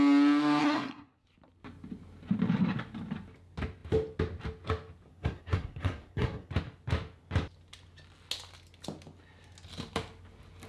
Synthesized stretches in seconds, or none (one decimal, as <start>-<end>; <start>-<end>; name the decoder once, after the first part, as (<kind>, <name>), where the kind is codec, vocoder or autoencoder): 0.6-1.2 (codec, SNAC); 5.1-6.5